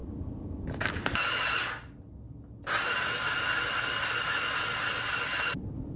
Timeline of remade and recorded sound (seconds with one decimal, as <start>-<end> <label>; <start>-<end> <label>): 0.0-6.0 recorded

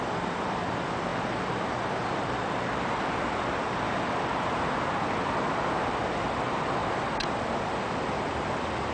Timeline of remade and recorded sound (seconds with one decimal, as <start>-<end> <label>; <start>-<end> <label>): 0.0-6.8 recorded; 6.8-8.3 remade; 8.3-8.9 recorded

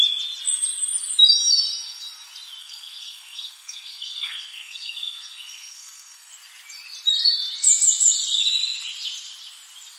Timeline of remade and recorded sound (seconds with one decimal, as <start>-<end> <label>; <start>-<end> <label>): 0.0-2.6 recorded; 2.6-6.3 remade; 6.3-10.0 recorded

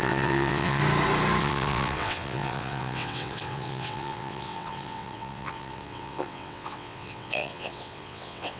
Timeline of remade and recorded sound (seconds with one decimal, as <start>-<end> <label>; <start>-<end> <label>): 0.0-0.8 remade; 0.8-1.4 recorded; 1.4-8.6 remade